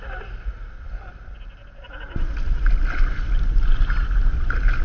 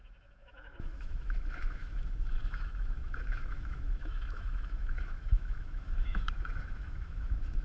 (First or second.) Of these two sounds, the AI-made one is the second